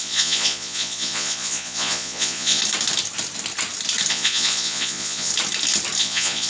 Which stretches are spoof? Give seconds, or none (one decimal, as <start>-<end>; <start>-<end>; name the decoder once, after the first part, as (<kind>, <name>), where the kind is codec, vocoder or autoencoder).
0.0-2.6 (vocoder, Vocos); 4.1-5.3; 6.0-6.5